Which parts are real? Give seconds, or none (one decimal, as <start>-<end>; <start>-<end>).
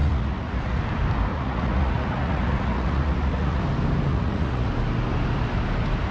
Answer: 0.8-1.3; 3.6-4.1; 4.7-6.1